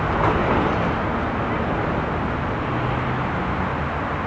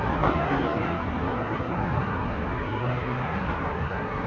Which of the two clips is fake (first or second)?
second